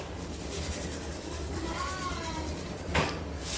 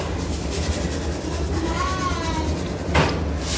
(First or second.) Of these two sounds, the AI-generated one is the first